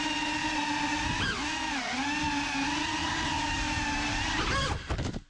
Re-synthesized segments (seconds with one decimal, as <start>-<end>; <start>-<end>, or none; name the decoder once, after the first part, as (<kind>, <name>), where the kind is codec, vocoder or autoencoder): 0.4-1.2 (vocoder, BigVGAN v2); 3.0-4.7